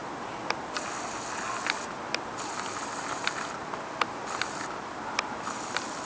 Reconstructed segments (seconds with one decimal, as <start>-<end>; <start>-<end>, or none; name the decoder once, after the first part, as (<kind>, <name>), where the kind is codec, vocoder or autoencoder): none